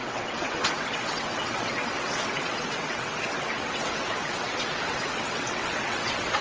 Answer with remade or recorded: remade